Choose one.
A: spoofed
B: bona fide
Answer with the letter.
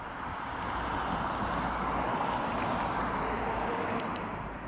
B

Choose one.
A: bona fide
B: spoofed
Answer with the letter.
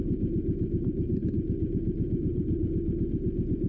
A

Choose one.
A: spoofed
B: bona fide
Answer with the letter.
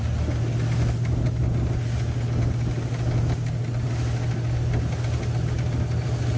B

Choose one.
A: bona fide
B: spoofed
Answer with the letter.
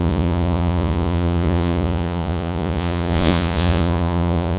B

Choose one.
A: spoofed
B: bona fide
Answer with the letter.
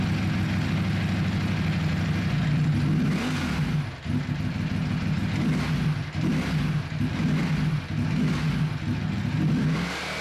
B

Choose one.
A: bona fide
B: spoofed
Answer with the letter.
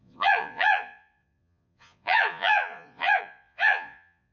B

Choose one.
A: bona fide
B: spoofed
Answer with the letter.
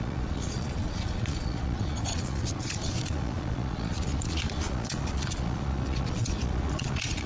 B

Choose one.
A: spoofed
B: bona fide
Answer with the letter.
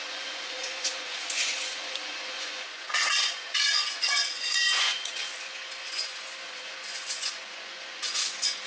A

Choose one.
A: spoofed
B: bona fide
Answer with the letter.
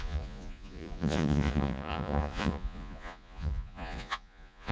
A